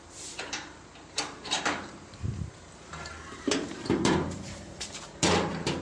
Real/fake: fake